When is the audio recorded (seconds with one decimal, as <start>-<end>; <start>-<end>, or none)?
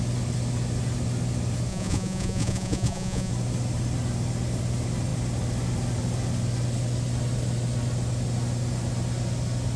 0.0-1.7; 3.3-9.8